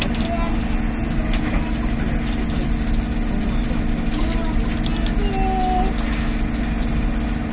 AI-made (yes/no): no